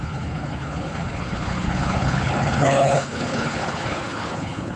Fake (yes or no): yes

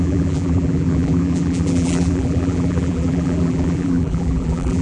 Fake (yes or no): yes